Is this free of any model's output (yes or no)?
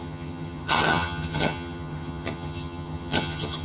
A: no